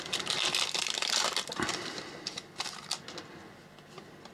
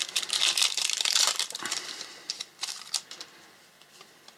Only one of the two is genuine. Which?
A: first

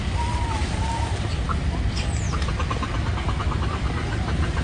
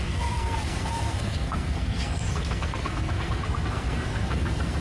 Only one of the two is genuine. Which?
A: first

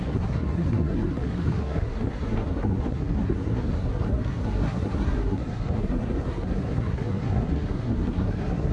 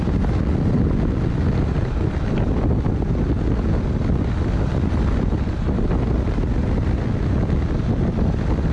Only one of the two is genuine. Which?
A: second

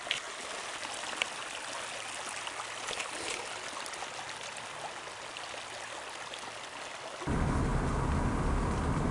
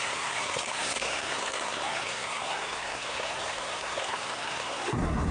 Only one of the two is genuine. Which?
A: first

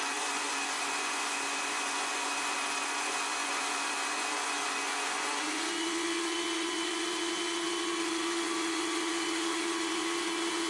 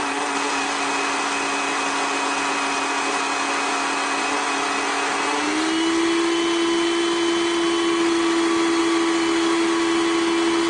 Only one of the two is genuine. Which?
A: second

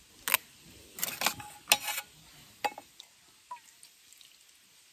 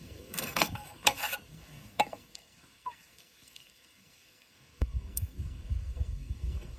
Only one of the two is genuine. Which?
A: first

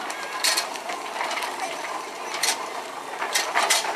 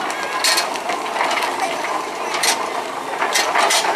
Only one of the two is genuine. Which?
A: second